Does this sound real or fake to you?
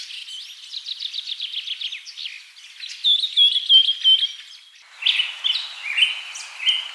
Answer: real